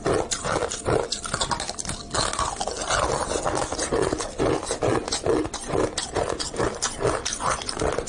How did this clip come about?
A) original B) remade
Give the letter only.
A